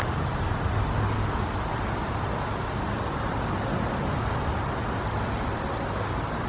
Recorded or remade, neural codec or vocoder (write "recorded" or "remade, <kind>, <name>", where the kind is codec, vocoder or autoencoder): recorded